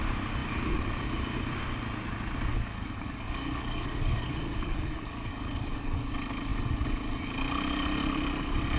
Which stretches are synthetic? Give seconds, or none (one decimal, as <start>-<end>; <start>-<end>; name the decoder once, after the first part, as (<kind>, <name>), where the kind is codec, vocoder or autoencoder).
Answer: 2.5-6.1 (codec, DAC)